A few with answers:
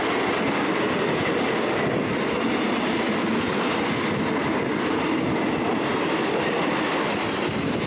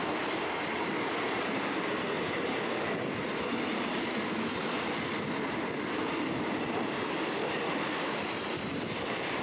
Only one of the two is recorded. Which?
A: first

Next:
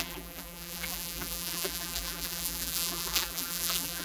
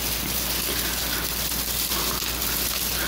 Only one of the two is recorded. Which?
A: second